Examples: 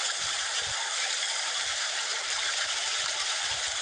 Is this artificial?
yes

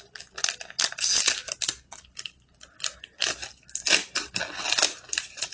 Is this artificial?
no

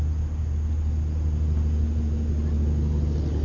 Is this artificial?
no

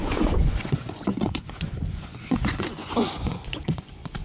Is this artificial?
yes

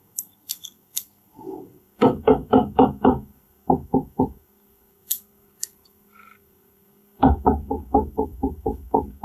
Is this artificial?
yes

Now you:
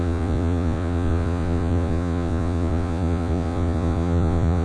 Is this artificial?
yes